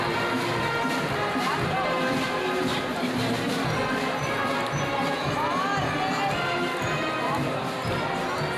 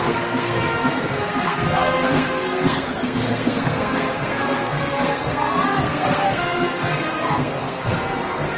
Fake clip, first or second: second